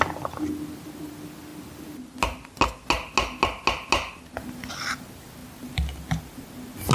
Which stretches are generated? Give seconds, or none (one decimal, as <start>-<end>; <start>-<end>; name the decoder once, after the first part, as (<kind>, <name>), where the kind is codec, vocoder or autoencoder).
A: none

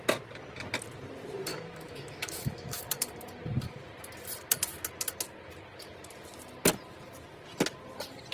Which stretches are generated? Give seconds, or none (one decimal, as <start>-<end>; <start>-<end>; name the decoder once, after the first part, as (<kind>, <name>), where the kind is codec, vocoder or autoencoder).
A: 1.5-2.8 (autoencoder, DAC-VAE)

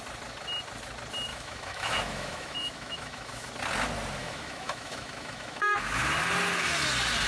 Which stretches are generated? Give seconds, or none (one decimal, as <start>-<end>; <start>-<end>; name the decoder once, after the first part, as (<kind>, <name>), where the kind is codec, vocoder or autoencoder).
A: 1.3-3.5 (autoencoder, DAC-VAE); 4.2-6.0

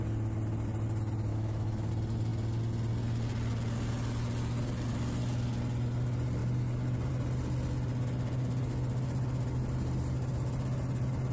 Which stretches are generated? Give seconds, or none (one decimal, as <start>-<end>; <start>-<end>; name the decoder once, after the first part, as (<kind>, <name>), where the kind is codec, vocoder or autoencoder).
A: 1.3-1.9 (autoencoder, DAC-VAE)

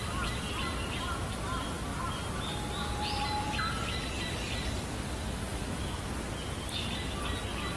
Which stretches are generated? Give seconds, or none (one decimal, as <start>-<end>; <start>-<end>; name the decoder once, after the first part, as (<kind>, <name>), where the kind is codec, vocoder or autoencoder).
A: 5.4-6.1 (autoencoder, DAC-VAE)

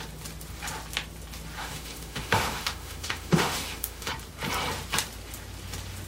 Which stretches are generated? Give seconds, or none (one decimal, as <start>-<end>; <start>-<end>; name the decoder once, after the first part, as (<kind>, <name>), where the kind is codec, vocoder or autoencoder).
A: 1.6-4.1 (autoencoder, DAC-VAE)